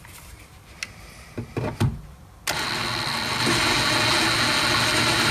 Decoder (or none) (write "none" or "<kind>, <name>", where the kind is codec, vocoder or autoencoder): none